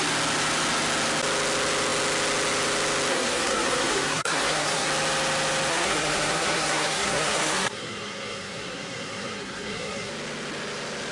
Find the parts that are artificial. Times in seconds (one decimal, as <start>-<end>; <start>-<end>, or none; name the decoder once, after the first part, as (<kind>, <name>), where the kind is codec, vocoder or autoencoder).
3.1-4.9 (codec, SNAC); 5.7-10.1